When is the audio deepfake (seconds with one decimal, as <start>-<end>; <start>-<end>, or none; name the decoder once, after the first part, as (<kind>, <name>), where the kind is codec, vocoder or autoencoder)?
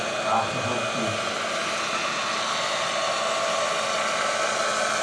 none